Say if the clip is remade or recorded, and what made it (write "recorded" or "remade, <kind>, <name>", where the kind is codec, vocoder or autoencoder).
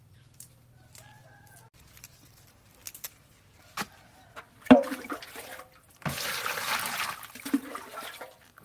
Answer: remade, vocoder, BigVGAN v2